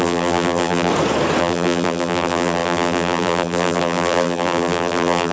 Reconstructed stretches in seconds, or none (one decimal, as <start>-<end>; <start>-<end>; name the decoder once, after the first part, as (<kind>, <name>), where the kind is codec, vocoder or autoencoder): 0.0-0.9 (vocoder, BigVGAN v2); 1.4-5.3